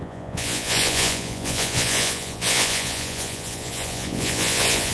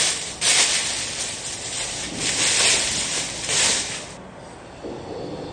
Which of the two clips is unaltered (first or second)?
second